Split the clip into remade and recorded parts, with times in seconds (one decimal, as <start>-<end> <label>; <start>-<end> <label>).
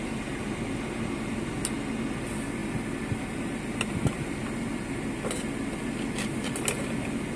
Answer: 0.0-7.4 recorded